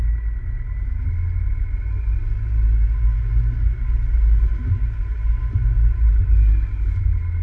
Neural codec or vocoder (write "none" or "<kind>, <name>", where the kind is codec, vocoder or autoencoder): none